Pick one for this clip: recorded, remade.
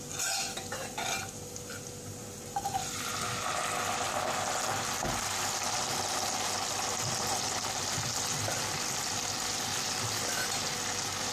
recorded